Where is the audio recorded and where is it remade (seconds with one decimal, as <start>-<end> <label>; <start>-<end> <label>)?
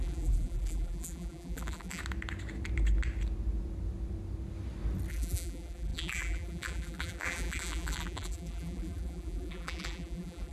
0.0-2.0 remade; 2.0-5.1 recorded; 5.1-10.5 remade